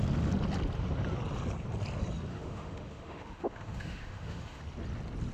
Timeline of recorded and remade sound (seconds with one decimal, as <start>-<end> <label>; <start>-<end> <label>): 0.0-2.3 recorded; 2.3-4.6 remade; 4.6-5.3 recorded